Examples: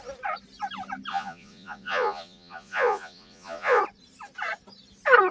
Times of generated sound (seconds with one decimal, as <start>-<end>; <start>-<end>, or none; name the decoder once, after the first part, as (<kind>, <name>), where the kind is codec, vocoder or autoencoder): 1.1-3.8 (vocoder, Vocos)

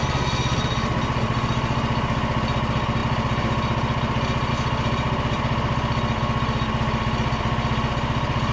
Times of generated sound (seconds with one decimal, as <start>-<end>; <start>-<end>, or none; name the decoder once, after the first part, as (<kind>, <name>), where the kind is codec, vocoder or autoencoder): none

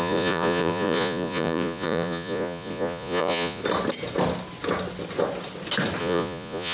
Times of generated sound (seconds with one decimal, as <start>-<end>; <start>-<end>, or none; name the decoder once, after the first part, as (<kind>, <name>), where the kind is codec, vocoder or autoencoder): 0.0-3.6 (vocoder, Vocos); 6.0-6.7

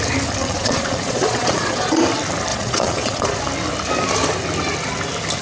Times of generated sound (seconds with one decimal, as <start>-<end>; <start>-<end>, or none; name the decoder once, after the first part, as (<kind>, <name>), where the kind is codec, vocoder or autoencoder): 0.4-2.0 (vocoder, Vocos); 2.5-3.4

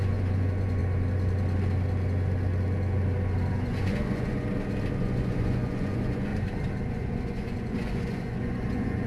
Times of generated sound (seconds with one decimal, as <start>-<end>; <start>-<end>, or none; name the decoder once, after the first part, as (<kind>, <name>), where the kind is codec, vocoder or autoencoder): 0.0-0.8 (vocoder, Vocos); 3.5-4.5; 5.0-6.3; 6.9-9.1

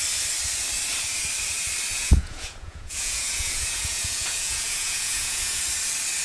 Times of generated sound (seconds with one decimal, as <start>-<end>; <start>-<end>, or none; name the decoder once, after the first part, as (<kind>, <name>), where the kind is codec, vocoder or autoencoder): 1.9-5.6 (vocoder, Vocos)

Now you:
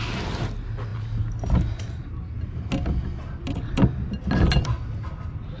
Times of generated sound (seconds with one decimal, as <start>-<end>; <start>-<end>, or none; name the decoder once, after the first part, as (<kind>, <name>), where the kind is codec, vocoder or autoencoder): none